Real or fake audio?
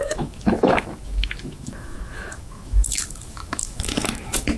fake